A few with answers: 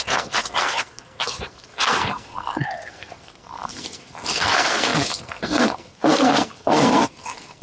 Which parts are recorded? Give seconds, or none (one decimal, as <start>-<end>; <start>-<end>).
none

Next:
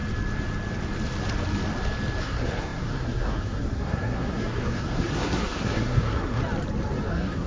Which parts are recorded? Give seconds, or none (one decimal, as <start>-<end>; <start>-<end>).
0.0-2.2; 6.4-7.1

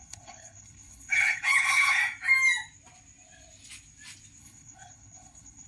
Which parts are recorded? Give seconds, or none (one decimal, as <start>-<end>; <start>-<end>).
2.0-4.4